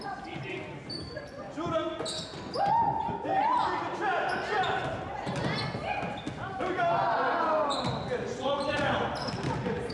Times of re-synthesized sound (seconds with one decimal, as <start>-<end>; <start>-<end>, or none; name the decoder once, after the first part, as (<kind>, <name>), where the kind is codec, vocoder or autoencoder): 3.3-4.8 (vocoder, BigVGAN v2)